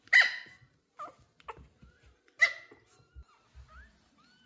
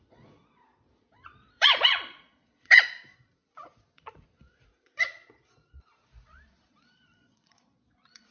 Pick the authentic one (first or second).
first